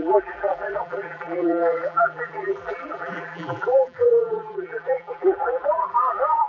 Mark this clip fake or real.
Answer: fake